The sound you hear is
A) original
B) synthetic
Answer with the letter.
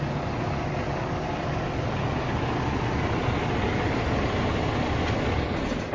A